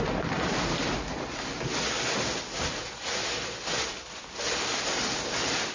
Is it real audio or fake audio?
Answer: fake